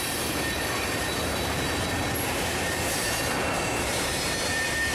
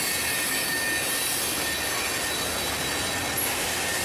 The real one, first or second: second